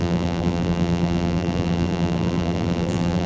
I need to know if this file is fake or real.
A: fake